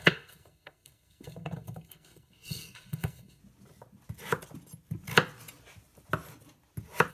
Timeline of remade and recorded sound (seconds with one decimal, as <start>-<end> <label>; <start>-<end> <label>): 0.0-3.4 remade; 3.4-7.1 recorded